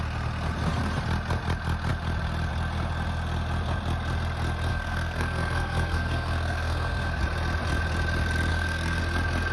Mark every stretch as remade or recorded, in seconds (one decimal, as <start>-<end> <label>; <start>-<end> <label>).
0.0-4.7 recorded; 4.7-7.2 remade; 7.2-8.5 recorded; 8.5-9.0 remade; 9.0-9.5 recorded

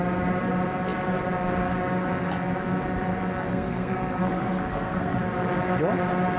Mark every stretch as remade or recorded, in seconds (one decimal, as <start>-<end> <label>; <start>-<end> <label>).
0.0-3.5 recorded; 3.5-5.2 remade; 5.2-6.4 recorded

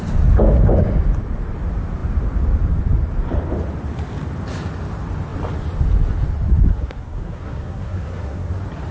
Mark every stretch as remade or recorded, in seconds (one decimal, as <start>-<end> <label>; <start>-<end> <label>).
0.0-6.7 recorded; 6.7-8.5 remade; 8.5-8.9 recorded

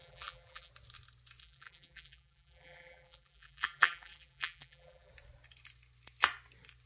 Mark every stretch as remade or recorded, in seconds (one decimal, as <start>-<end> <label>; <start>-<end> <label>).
0.0-0.7 remade; 0.7-1.4 recorded; 1.4-5.1 remade; 5.1-6.9 recorded

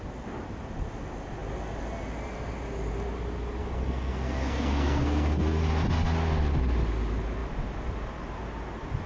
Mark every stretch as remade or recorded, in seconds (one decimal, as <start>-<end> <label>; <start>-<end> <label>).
0.0-3.6 recorded; 3.6-5.6 remade; 5.6-9.1 recorded